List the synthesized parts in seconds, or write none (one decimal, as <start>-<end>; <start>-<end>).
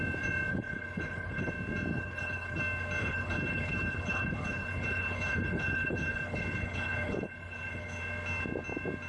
0.5-1.5; 1.9-2.6; 3.0-8.0